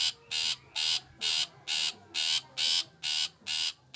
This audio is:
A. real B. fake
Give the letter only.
A